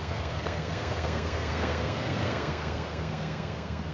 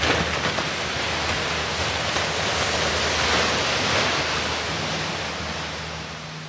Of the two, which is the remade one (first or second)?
first